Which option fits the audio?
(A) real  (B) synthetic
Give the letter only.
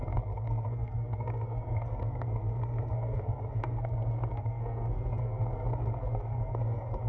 B